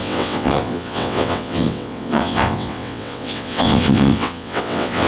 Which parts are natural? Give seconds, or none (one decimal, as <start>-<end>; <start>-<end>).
none